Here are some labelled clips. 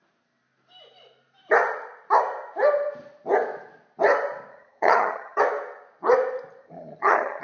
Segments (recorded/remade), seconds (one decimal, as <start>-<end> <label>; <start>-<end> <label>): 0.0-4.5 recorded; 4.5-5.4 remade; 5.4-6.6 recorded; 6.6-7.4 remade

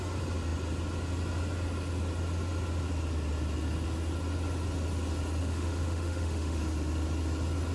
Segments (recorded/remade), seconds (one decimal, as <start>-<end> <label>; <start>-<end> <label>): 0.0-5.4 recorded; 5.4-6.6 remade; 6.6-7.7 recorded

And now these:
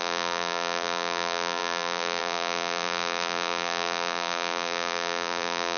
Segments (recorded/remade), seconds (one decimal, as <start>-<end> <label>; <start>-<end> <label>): 0.0-5.8 remade

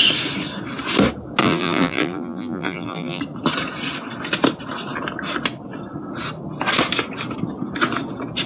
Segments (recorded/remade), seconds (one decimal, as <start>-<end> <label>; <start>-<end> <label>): 0.0-1.4 recorded; 1.4-3.2 remade; 3.2-8.5 recorded